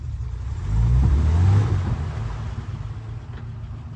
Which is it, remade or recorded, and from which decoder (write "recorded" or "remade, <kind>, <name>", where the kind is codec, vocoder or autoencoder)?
recorded